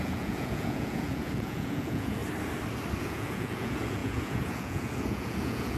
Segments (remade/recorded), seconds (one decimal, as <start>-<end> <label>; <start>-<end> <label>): 0.0-2.2 remade; 2.2-3.0 recorded; 3.0-5.8 remade